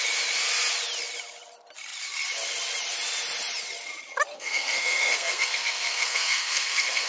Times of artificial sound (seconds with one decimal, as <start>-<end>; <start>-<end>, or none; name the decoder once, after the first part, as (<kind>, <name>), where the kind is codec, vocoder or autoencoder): 4.3-7.1 (codec, SNAC)